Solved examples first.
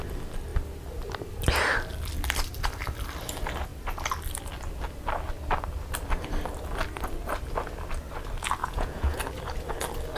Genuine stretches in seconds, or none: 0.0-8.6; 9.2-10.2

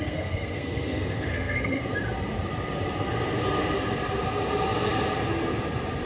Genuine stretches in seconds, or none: 1.8-6.1